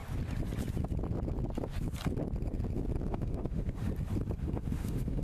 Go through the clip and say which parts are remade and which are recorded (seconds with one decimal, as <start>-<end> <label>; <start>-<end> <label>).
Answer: 0.0-3.1 recorded; 3.1-3.9 remade; 3.9-4.4 recorded; 4.4-5.2 remade